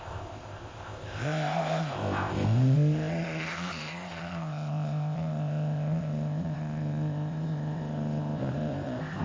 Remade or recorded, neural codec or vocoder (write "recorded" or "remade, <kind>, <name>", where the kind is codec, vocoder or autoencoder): remade, codec, ZipCodec